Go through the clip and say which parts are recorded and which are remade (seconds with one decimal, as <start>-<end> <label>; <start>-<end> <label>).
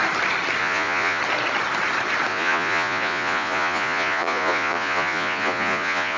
0.0-0.6 recorded; 0.6-1.2 remade; 1.2-2.3 recorded; 2.3-6.2 remade